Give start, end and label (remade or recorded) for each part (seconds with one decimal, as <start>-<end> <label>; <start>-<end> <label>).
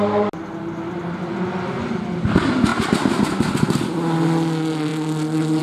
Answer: 0.0-5.6 recorded